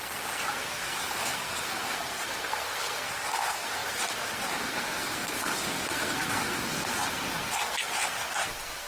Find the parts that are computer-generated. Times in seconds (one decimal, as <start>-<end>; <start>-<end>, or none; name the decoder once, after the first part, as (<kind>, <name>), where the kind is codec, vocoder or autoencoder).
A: 0.0-8.9 (codec, SNAC)